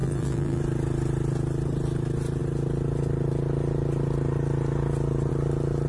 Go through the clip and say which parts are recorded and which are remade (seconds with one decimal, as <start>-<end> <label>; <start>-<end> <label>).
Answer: 0.0-0.6 remade; 0.6-5.9 recorded